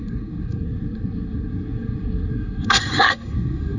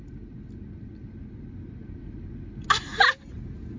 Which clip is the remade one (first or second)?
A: first